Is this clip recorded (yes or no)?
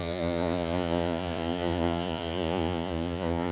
no